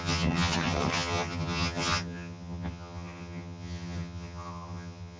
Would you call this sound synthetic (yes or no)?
yes